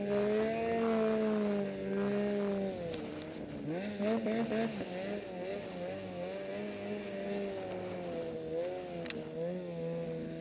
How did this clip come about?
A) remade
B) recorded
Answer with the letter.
B